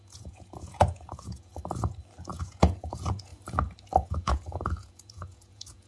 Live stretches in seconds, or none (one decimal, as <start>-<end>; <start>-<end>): 1.5-2.3; 3.3-4.1

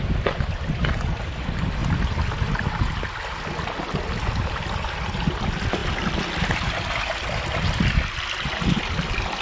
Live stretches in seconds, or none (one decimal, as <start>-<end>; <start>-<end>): 0.0-9.4

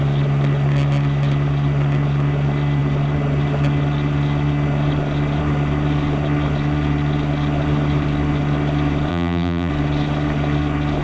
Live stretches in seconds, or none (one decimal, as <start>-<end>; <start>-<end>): 0.0-9.1; 9.7-11.0

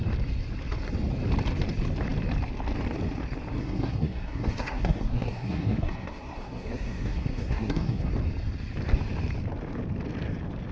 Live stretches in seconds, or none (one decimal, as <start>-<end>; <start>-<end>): 0.0-3.5; 8.1-10.7

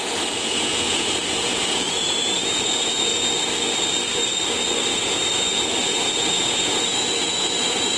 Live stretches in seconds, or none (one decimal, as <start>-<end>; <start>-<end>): 3.1-4.9

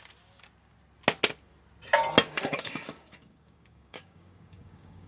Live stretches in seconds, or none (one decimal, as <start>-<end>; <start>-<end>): 0.0-2.2